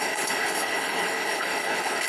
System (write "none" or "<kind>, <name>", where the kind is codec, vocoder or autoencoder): codec, HILCodec